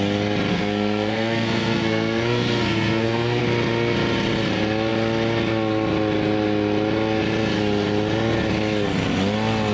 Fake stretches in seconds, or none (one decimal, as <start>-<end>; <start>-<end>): 0.5-3.4